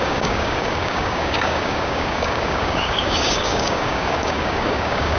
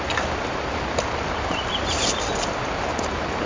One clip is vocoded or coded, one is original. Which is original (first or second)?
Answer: second